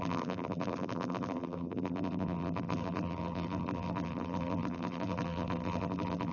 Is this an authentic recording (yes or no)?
no